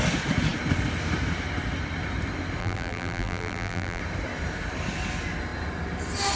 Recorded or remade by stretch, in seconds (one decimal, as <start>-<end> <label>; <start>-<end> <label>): 0.0-2.6 recorded; 2.6-4.0 remade; 4.0-6.4 recorded